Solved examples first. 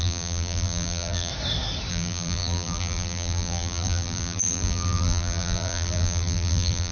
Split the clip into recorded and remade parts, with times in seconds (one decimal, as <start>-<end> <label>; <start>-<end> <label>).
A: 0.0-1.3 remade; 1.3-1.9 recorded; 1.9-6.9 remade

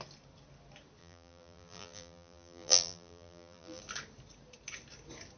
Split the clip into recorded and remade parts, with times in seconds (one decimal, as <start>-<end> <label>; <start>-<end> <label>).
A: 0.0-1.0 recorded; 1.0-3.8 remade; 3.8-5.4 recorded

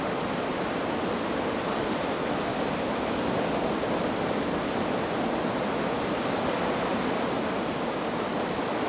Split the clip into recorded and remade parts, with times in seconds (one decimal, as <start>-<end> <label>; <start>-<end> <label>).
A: 0.0-2.5 recorded; 2.5-3.2 remade; 3.2-8.3 recorded; 8.3-8.9 remade

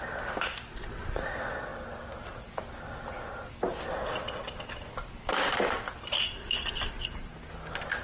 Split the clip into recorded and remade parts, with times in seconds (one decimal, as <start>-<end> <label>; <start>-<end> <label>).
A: 0.0-8.0 recorded

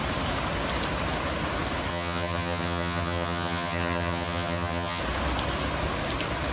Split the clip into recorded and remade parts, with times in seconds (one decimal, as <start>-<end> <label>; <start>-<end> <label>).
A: 0.0-1.9 recorded; 1.9-5.0 remade; 5.0-6.5 recorded

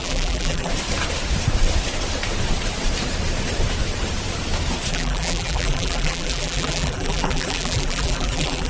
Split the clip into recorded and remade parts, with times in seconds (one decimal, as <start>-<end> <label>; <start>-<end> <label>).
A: 0.0-0.7 remade; 0.7-4.9 recorded; 4.9-8.7 remade